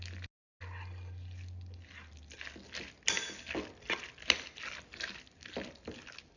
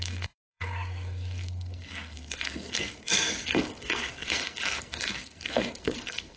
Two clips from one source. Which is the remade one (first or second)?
second